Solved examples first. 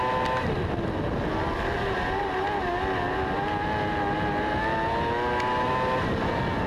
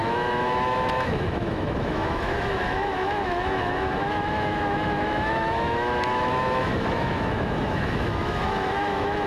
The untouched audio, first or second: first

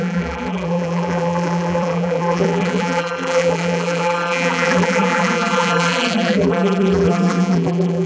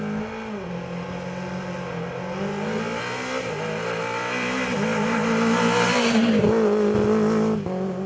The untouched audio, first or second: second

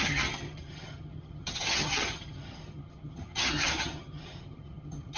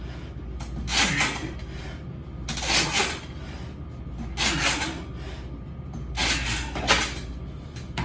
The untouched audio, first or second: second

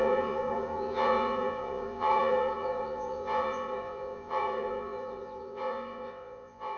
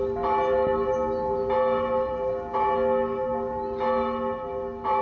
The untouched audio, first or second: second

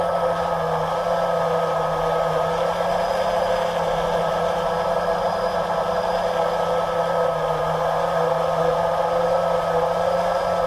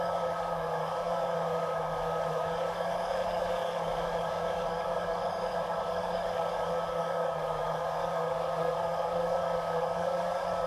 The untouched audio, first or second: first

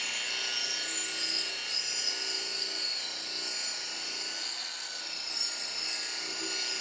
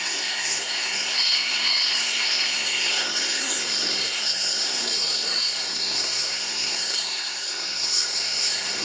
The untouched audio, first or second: first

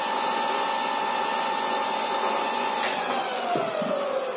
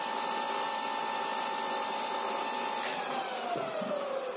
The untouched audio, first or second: second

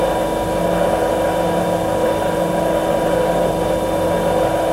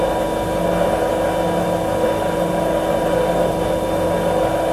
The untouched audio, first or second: second